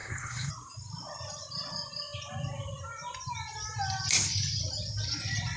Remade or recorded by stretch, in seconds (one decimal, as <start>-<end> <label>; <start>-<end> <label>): 0.0-0.5 remade; 0.5-5.6 recorded